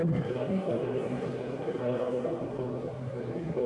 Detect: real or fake fake